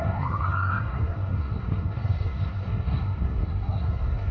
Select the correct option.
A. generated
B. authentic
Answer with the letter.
A